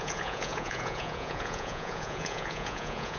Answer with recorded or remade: remade